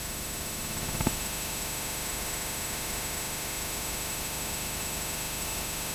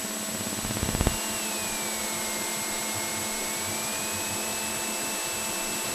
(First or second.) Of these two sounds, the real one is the second